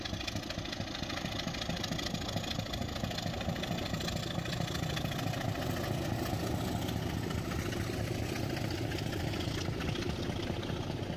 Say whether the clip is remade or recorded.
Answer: recorded